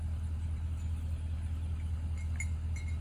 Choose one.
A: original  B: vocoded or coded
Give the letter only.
A